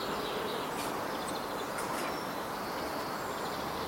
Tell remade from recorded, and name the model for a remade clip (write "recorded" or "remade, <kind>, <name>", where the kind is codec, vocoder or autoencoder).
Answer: recorded